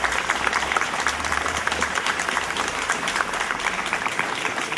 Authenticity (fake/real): fake